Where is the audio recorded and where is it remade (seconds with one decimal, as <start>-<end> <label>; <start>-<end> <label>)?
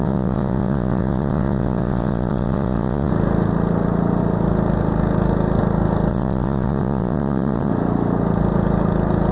0.0-3.1 remade; 3.1-6.1 recorded; 6.1-7.7 remade; 7.7-9.3 recorded